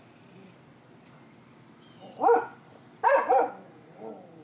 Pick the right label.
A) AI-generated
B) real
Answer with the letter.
B